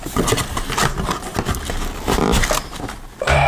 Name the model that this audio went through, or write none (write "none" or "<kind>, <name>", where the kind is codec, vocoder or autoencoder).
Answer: none